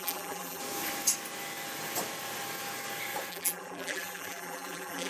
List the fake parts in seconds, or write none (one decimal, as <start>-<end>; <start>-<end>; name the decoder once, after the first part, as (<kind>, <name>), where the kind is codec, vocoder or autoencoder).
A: 0.0-0.6 (vocoder, BigVGAN v2); 3.3-5.1